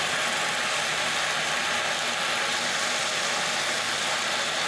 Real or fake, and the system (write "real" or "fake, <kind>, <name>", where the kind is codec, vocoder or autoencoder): real